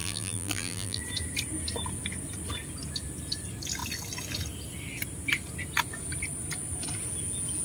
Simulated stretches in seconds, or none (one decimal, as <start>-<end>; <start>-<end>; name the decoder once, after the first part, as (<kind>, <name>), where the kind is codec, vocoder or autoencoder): 0.0-1.0 (vocoder, BigVGAN v2)

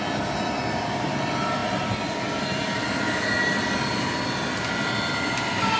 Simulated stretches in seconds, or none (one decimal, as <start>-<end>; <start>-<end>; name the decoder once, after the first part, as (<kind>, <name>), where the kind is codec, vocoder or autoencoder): none

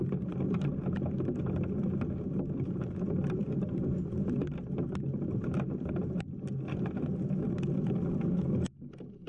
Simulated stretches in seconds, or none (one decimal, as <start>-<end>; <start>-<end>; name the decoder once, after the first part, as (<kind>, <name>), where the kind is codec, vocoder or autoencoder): none

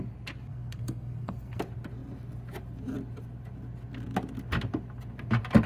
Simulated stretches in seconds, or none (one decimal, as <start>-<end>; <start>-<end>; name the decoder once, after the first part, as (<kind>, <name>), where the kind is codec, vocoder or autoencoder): 0.5-1.6 (codec, SNAC)

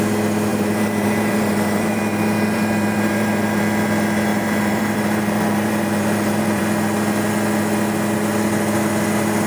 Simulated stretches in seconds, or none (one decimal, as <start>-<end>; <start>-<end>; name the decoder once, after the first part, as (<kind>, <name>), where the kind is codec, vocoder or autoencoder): 0.5-3.6 (vocoder, BigVGAN v2); 4.3-6.6

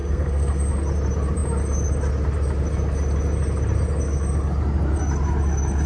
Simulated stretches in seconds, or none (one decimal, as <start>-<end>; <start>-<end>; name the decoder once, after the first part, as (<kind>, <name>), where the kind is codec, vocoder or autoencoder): 0.0-0.7 (codec, SNAC)

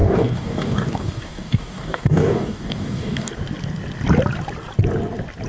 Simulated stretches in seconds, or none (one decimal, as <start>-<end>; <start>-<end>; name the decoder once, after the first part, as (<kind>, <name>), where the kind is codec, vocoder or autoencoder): 0.0-3.3 (codec, DAC)